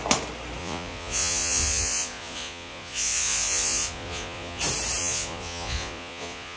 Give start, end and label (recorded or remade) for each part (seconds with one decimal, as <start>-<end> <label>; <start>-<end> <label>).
0.0-0.6 recorded; 0.6-4.6 remade; 4.6-5.0 recorded; 5.0-6.6 remade